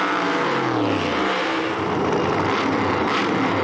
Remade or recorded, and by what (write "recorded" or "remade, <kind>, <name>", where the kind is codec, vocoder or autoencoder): recorded